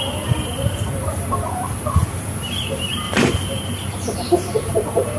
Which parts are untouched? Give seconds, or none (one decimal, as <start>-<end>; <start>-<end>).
0.0-0.5; 1.3-2.0